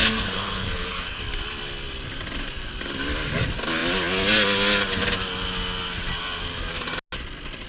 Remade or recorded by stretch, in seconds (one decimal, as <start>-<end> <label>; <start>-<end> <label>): 0.0-1.2 remade; 1.2-7.7 recorded